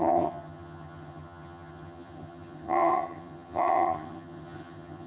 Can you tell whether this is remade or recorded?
remade